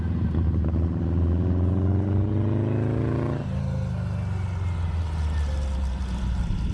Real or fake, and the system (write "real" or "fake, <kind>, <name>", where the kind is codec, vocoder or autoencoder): real